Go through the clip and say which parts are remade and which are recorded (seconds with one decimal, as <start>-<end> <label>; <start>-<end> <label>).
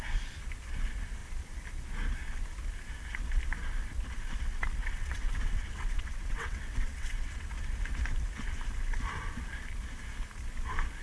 0.0-4.8 recorded; 4.8-7.5 remade; 7.5-11.0 recorded